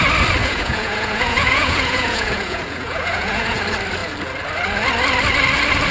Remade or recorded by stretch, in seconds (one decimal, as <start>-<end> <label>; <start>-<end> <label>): 0.0-0.4 recorded; 0.4-3.6 remade; 3.6-5.9 recorded